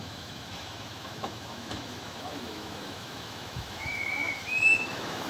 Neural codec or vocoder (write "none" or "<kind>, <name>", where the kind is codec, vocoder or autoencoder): autoencoder, DAC-VAE